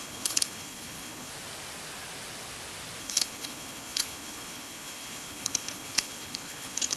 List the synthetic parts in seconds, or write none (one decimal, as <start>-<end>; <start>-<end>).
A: 0.0-1.3; 3.0-7.0